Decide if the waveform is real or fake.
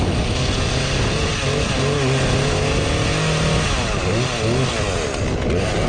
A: real